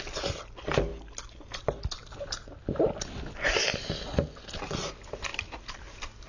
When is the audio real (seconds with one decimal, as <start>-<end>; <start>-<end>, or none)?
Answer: 0.0-6.3